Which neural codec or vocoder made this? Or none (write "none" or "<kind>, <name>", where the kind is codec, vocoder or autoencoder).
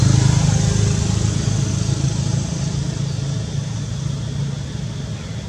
none